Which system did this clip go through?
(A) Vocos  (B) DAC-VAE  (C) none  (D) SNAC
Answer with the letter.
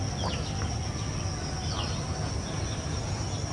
C